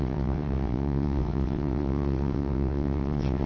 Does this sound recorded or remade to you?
remade